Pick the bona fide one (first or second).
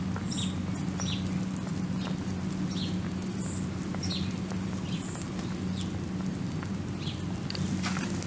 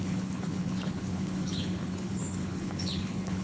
first